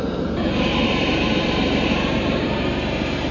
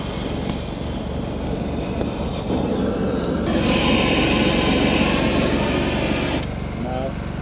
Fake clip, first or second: first